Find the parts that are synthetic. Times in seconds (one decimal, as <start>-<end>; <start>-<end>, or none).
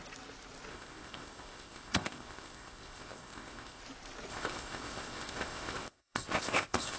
0.7-3.8; 4.3-7.0